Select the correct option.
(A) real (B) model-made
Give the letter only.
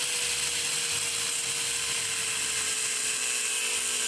A